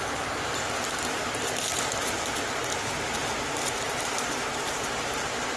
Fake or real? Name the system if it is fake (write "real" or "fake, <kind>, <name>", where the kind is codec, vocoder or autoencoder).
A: fake, vocoder, BigVGAN v2